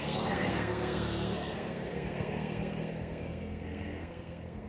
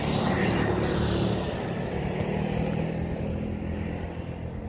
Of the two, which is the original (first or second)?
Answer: second